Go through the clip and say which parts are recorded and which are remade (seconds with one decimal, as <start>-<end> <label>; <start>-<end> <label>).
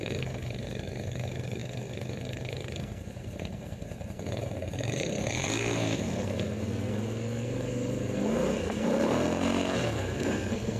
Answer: 0.0-10.8 remade